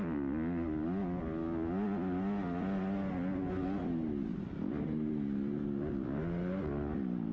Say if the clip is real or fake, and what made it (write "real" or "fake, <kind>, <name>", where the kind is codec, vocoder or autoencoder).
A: real